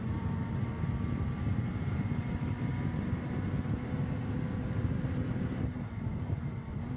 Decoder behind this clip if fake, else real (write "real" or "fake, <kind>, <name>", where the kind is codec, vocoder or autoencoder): fake, vocoder, BigVGAN v2